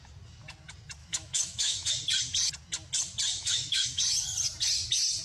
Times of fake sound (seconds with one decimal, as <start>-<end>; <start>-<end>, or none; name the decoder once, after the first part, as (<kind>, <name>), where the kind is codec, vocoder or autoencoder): 1.0-1.9 (autoencoder, DAC-VAE); 3.4-4.0